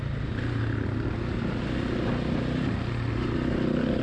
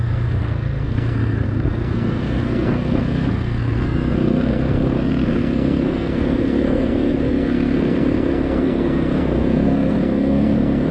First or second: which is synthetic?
second